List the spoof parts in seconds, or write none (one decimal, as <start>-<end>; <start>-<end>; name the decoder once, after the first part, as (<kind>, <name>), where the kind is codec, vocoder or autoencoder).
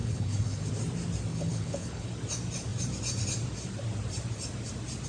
0.0-0.7 (codec, HILCodec); 1.3-2.1